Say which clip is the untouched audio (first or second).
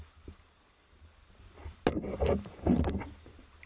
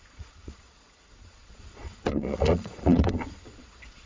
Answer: first